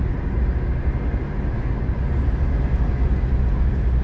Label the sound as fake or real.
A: real